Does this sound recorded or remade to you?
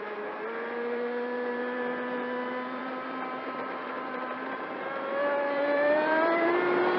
remade